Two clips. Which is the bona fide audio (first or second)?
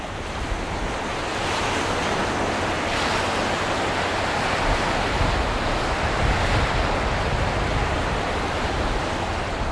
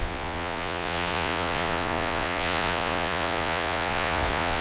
first